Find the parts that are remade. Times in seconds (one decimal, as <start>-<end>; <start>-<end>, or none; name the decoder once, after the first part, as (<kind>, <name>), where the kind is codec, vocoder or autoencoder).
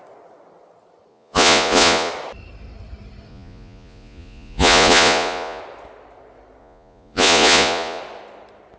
1.1-2.1 (vocoder, Vocos); 3.3-5.6; 6.6-8.0